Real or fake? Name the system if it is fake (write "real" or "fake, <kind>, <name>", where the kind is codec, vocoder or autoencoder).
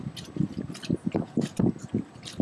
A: real